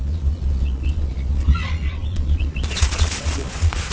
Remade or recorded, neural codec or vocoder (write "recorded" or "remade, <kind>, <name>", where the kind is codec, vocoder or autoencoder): remade, vocoder, Vocos